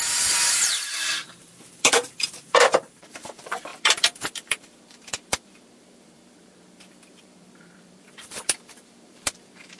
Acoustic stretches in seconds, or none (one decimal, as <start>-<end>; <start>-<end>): none